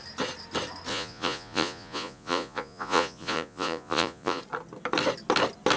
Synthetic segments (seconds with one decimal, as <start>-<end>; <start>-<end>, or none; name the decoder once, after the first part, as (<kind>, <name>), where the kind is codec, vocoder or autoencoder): 0.9-4.4 (vocoder, Vocos)